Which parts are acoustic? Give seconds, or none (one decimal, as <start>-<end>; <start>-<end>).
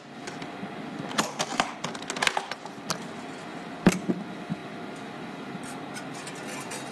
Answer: 0.0-6.9